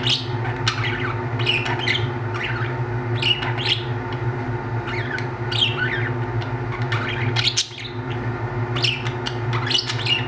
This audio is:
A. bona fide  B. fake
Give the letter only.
A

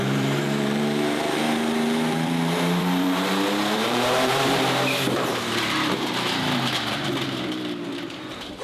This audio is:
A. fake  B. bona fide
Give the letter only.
A